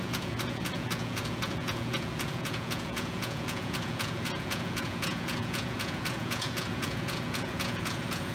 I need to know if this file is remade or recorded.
remade